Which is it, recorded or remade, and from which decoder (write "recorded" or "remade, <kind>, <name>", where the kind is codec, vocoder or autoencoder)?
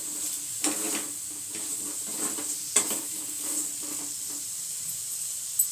recorded